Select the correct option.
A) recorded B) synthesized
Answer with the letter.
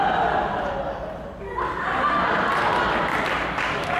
A